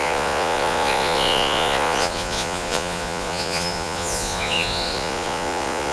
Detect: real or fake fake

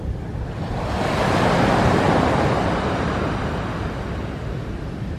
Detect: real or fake real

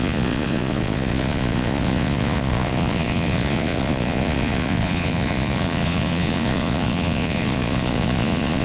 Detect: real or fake fake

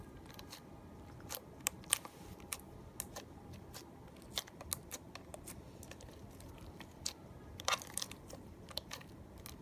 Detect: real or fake real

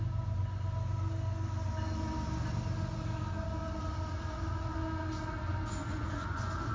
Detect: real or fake real